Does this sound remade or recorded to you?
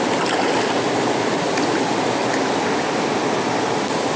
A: recorded